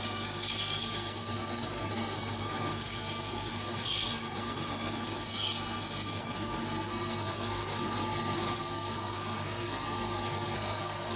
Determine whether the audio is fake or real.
fake